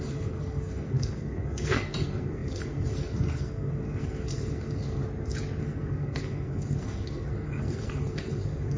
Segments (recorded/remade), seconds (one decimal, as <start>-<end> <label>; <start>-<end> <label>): 0.0-5.0 remade; 5.0-5.6 recorded; 5.6-8.8 remade